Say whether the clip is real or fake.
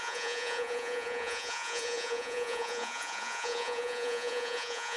fake